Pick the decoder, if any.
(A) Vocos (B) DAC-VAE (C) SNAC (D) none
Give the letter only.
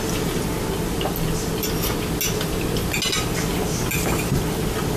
D